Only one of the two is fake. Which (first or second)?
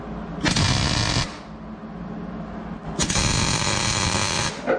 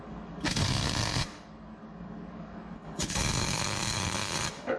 second